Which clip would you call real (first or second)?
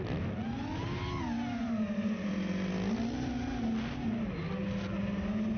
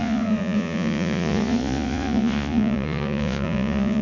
first